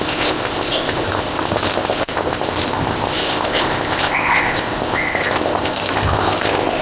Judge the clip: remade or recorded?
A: remade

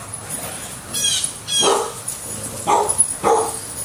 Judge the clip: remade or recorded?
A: recorded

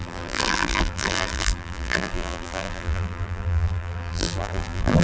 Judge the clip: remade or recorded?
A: remade